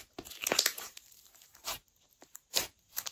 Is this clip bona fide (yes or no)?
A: no